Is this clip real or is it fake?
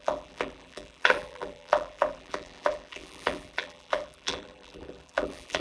fake